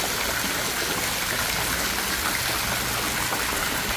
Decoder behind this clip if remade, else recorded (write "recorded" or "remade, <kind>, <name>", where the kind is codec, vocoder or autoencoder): recorded